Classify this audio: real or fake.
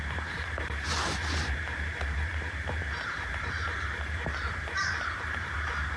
fake